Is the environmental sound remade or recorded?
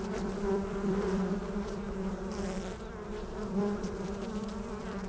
remade